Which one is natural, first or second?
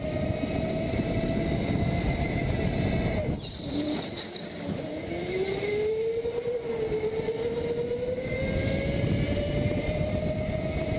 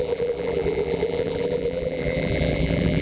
first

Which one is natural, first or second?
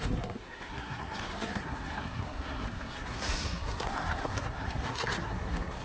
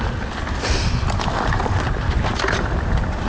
second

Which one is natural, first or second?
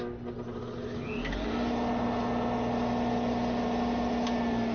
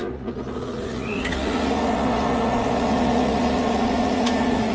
first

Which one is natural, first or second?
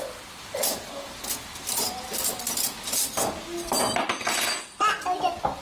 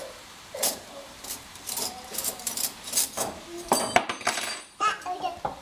first